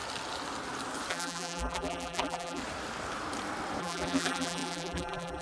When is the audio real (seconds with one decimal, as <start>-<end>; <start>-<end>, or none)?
0.0-1.1; 2.6-3.8